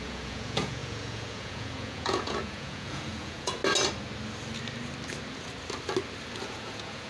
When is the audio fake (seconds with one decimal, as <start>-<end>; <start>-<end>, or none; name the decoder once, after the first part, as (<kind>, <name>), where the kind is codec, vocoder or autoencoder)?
0.0-3.6 (vocoder, Vocos); 6.5-7.1